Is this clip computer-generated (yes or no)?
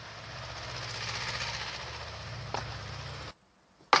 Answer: no